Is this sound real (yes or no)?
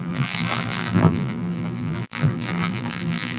no